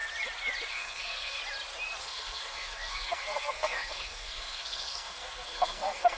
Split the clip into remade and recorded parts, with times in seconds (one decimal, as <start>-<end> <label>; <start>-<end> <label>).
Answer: 0.0-0.7 recorded; 0.7-1.4 remade; 1.4-2.0 recorded; 2.0-6.2 remade